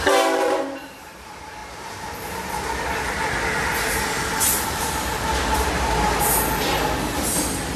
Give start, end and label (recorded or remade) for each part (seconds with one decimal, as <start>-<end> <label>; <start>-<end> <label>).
0.0-7.8 recorded